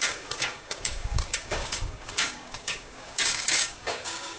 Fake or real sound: fake